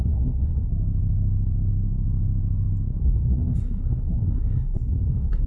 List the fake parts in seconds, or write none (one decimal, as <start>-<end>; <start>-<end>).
0.0-0.7; 3.0-5.5